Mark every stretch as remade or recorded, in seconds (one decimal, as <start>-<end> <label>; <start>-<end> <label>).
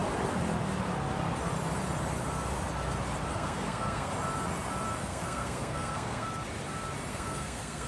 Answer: 0.0-3.3 recorded; 3.3-4.1 remade; 4.1-5.0 recorded; 5.0-6.3 remade; 6.3-7.1 recorded; 7.1-7.9 remade